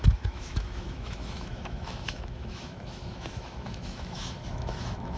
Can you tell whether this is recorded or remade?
remade